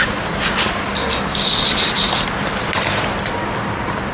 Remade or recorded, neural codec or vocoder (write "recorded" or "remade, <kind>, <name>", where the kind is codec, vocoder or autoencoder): recorded